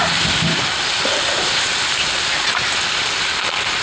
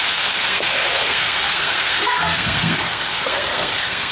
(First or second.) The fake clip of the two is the second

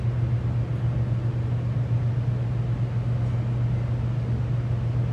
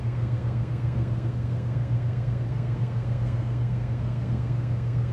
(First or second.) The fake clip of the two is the second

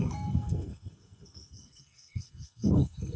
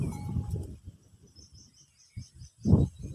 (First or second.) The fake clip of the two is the first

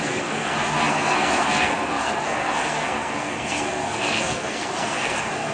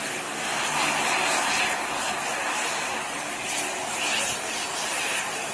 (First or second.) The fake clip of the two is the first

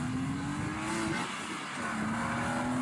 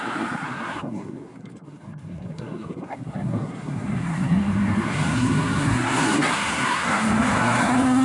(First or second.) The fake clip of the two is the second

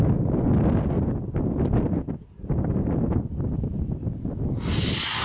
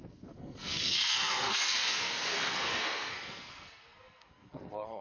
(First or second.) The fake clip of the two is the second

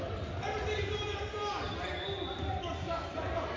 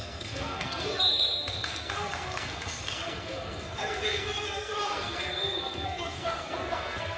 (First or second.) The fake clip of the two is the second